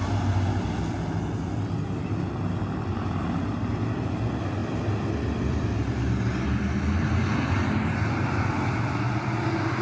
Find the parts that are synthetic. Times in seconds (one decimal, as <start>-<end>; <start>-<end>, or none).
4.6-5.5